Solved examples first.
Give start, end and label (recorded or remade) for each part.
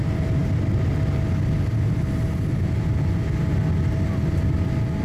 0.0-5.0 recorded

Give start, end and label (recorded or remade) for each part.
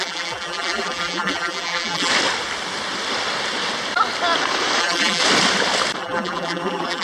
0.0-2.1 remade; 2.1-4.8 recorded; 4.8-5.2 remade; 5.2-6.0 recorded; 6.0-7.0 remade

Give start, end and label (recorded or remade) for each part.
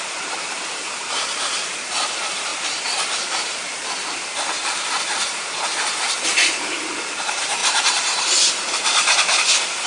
0.0-9.9 remade